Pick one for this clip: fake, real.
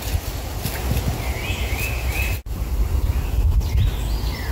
real